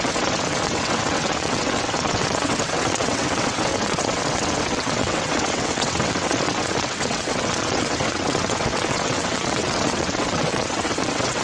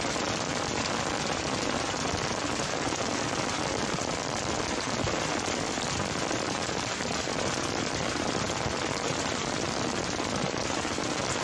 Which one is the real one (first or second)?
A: second